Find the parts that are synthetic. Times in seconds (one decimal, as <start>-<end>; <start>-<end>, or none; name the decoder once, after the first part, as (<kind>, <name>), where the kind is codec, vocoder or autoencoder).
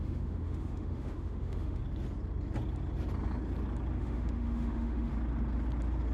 0.0-1.8 (autoencoder, DAC-VAE); 4.0-5.1